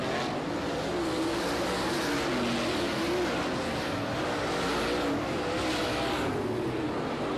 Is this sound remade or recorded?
recorded